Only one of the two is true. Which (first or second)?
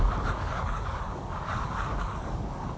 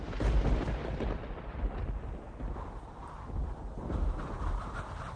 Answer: second